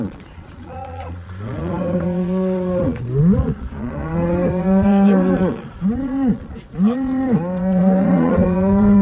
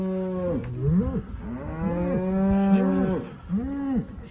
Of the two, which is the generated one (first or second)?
first